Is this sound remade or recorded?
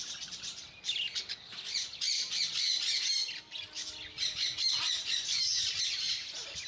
recorded